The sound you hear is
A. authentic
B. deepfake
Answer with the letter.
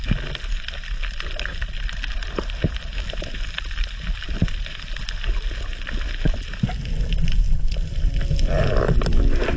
A